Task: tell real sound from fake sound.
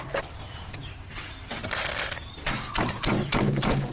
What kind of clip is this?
real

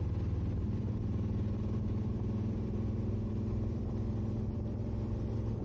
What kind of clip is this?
real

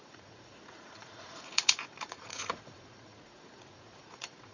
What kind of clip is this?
fake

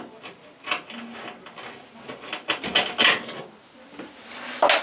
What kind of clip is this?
real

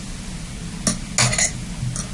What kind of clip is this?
real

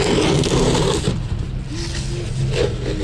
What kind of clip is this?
real